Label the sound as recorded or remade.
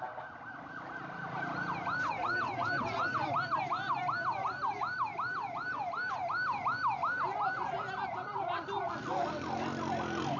recorded